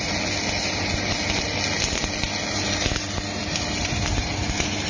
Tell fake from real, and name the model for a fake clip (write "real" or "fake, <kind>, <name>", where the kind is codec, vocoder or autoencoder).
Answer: real